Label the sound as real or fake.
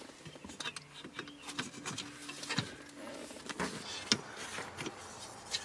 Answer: real